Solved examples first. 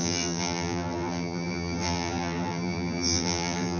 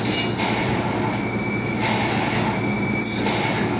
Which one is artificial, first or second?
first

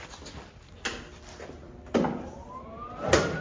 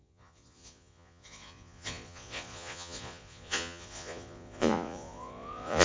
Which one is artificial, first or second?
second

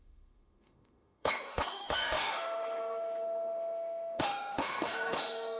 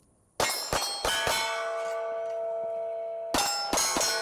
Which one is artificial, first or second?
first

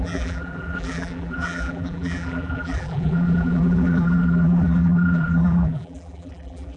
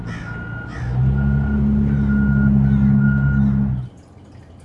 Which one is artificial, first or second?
first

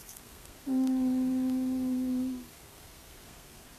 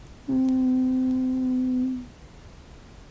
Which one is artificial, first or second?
first